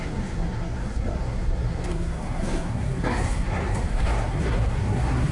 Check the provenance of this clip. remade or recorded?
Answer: remade